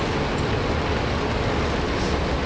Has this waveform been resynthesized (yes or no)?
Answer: no